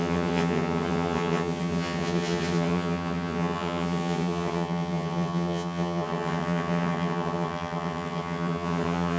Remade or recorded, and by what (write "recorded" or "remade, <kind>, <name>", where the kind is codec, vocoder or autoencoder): remade, vocoder, HiFi-GAN